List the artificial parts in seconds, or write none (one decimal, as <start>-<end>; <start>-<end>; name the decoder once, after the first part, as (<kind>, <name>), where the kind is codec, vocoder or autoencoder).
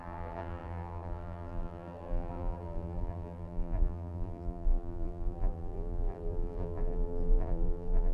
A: 0.0-8.1 (vocoder, BigVGAN v2)